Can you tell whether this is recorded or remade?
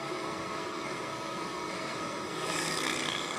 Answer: remade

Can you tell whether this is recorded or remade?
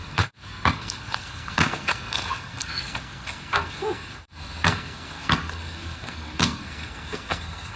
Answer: remade